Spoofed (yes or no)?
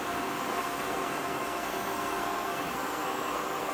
yes